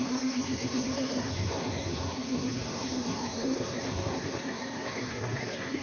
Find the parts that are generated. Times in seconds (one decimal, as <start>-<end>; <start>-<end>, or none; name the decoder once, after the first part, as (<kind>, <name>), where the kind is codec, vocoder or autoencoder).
0.0-5.8 (codec, SNAC)